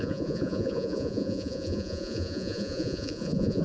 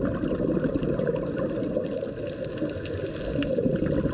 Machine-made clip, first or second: first